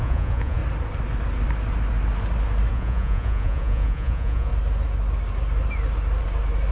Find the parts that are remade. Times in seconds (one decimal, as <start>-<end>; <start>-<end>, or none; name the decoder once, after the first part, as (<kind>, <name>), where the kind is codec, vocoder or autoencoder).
0.0-0.6 (vocoder, Vocos); 2.7-4.5

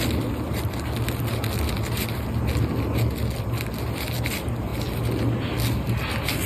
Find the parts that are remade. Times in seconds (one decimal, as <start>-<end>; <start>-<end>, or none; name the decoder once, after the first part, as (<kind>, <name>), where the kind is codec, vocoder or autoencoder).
none